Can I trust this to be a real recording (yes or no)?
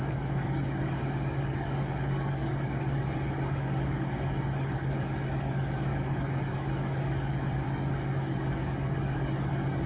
no